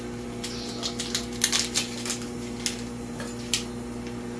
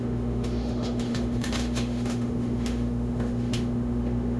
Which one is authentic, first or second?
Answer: first